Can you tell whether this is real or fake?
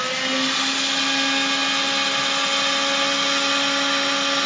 real